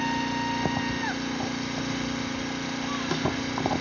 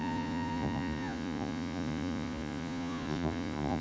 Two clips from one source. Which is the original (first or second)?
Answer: first